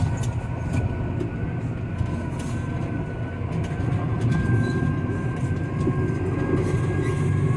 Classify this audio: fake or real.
real